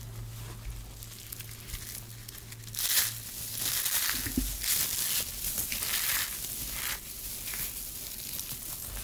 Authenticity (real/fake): real